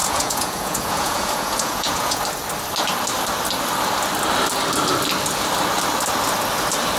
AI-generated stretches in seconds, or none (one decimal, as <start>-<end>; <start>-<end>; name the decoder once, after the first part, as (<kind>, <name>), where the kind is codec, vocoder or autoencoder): 0.0-2.2 (vocoder, Vocos)